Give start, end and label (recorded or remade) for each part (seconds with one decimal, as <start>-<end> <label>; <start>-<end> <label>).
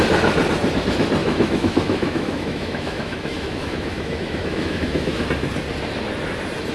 0.0-1.2 recorded; 1.2-5.2 remade; 5.2-6.7 recorded